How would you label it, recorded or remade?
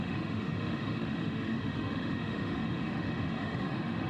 remade